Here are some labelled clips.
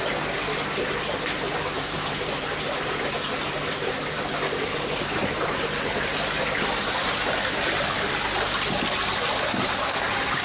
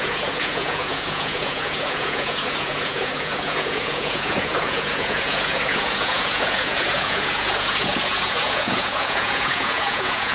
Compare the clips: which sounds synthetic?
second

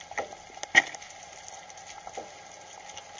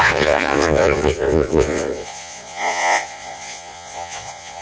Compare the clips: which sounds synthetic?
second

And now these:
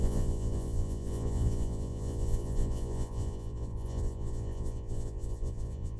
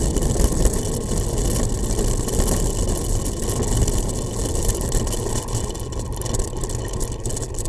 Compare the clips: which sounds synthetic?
first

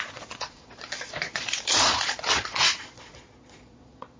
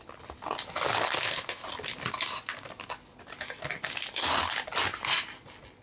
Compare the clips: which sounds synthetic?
first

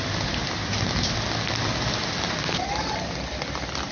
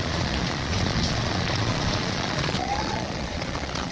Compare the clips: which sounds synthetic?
second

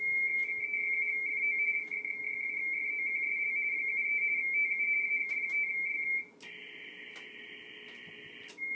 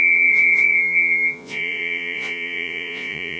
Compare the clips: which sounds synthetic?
second